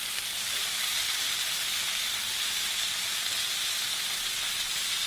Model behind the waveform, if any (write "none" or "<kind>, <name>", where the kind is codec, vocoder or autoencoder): vocoder, BigVGAN v2